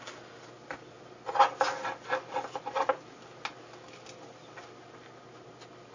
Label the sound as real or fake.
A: real